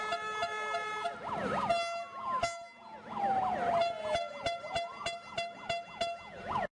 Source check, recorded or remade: recorded